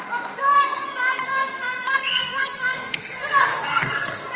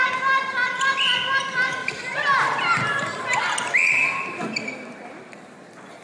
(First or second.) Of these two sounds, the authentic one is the second